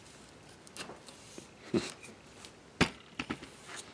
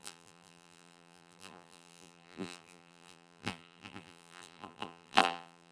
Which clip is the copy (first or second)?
second